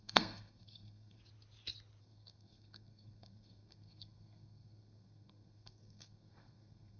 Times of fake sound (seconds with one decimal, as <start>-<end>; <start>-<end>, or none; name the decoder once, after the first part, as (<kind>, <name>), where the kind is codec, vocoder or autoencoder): 0.0-1.2 (codec, SNAC); 2.0-7.0